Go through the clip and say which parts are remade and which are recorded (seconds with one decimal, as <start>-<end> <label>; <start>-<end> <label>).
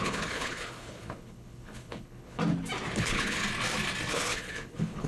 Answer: 0.0-2.4 remade; 2.4-3.0 recorded; 3.0-3.4 remade; 3.4-4.1 recorded; 4.1-5.1 remade